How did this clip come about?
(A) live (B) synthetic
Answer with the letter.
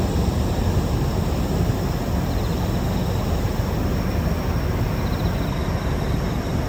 A